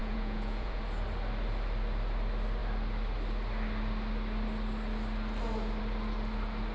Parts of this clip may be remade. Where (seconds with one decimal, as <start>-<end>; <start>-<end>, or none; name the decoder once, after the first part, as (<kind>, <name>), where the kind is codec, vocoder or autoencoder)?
0.0-0.8 (vocoder, Vocos)